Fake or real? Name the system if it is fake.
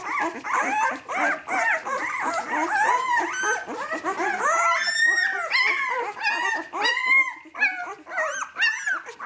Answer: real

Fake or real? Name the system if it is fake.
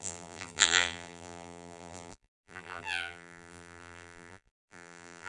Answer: fake, vocoder, BigVGAN v2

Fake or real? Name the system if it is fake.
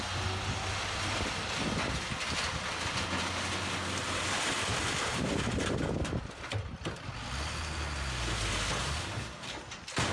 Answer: real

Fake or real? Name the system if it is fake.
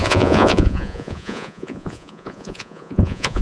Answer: fake, vocoder, Vocos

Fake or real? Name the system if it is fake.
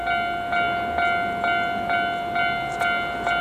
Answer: real